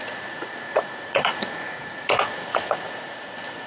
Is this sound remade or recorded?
remade